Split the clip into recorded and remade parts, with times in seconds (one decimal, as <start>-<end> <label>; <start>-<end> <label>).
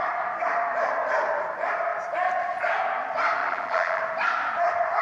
0.0-3.4 recorded; 3.4-4.0 remade; 4.0-5.0 recorded